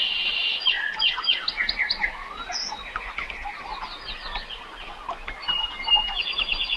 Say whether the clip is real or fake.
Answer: real